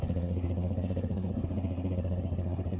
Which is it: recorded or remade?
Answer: remade